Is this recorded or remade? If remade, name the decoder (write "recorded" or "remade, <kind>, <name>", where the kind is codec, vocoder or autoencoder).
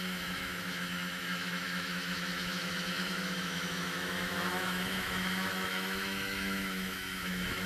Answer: remade, autoencoder, DAC-VAE